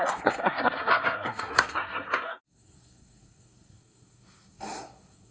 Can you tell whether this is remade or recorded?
remade